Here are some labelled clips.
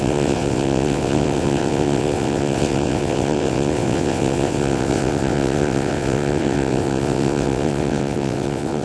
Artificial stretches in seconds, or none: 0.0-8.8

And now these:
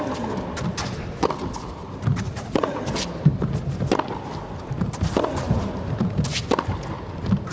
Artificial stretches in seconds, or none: 2.1-2.8

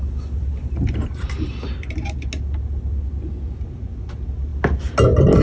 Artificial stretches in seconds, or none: none

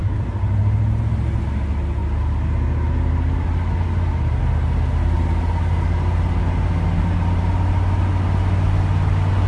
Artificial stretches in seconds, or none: none

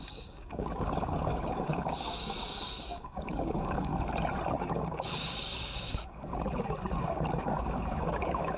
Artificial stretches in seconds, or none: 0.0-3.9; 4.5-8.6

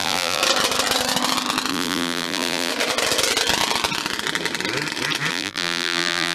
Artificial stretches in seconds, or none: 0.0-0.4; 1.7-2.7; 5.3-6.3

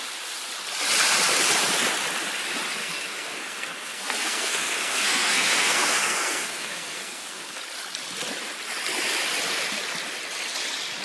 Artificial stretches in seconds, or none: 2.8-7.6

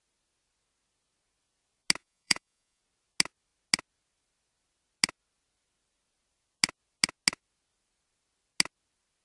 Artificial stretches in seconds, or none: 2.0-2.8